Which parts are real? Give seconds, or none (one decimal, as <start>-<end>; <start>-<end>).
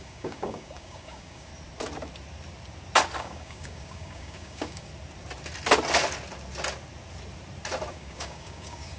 1.5-3.2; 4.9-7.9